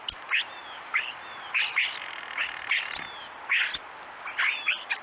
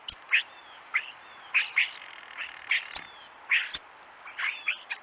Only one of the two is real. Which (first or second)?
first